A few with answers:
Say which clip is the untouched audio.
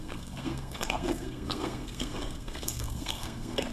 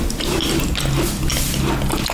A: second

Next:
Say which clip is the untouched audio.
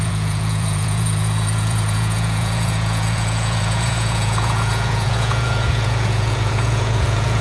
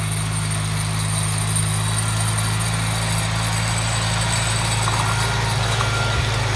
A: second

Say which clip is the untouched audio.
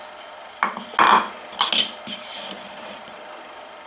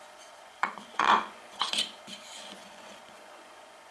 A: first